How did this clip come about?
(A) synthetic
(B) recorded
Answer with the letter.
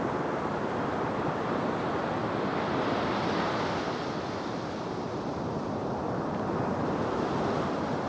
A